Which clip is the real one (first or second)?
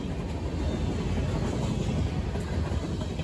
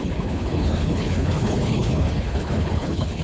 first